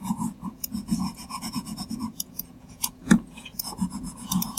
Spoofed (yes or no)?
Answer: yes